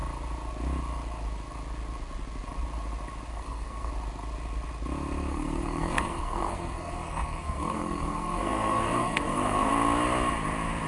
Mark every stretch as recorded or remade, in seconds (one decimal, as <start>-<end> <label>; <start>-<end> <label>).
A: 0.0-3.3 recorded; 3.3-3.9 remade; 3.9-5.3 recorded; 5.3-9.7 remade; 9.7-10.9 recorded